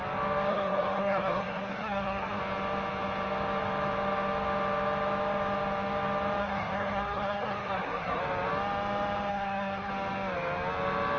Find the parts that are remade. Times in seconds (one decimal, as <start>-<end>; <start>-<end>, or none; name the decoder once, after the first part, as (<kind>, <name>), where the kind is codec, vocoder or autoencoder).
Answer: 0.5-2.4 (codec, SNAC); 6.4-8.2; 9.3-9.9